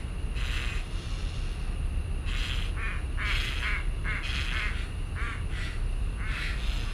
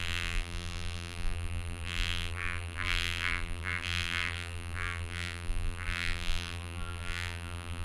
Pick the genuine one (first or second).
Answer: first